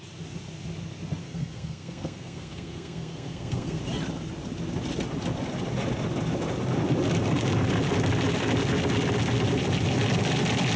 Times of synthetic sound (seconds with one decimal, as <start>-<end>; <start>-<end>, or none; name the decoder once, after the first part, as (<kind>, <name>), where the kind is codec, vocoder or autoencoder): 1.2-3.8 (codec, SNAC)